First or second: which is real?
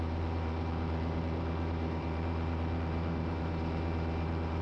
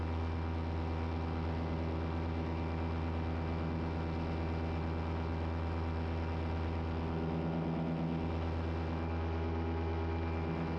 second